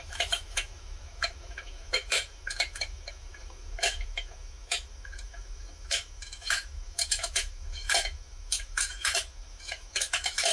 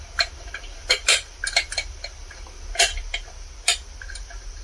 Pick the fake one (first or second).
first